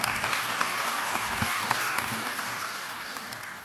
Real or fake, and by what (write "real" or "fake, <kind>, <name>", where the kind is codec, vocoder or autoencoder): fake, codec, DAC